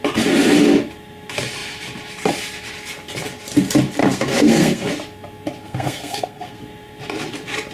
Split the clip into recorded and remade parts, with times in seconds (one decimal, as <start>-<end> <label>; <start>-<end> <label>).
0.0-4.0 recorded; 4.0-4.9 remade; 4.9-5.6 recorded; 5.6-6.6 remade; 6.6-7.7 recorded